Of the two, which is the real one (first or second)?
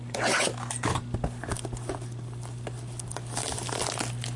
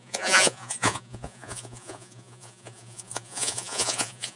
first